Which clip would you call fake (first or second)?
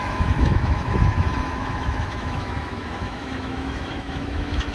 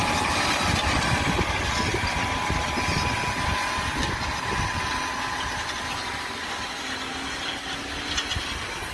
first